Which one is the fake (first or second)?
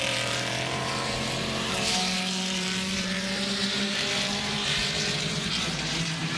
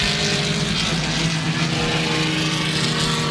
first